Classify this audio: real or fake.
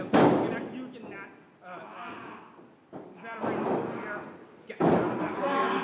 real